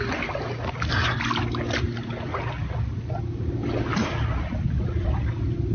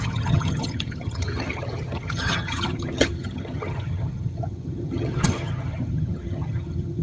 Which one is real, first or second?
first